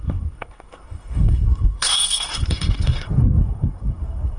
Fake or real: fake